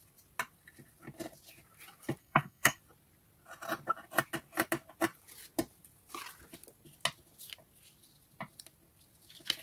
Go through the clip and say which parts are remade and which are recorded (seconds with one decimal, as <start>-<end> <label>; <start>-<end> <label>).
0.0-2.2 recorded; 2.2-2.8 remade; 2.8-9.6 recorded